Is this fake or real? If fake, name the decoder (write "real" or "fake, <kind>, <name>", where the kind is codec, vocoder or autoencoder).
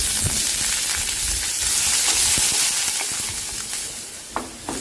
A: real